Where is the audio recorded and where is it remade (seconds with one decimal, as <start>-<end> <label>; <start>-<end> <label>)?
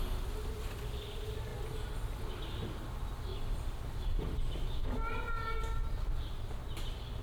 0.0-7.2 recorded